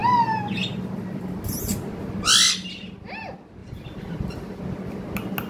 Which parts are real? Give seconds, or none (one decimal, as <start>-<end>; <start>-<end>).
0.0-3.6; 4.6-5.5